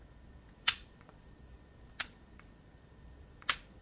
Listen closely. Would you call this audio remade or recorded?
remade